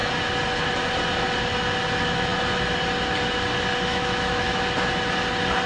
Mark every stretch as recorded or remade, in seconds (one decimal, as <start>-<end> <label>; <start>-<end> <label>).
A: 0.0-3.9 recorded; 3.9-4.6 remade; 4.6-5.7 recorded